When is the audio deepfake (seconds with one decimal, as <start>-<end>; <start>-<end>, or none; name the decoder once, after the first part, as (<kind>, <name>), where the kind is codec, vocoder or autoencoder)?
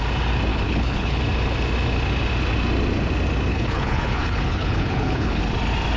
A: 0.5-1.2 (codec, HILCodec); 3.5-5.4